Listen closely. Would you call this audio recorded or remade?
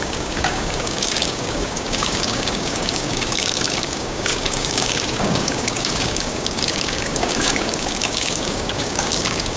remade